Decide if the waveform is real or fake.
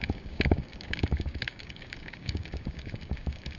fake